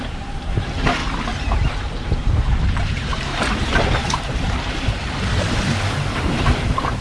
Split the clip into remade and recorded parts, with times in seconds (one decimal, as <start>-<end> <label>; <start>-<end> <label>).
0.0-1.0 remade; 1.0-1.9 recorded; 1.9-7.0 remade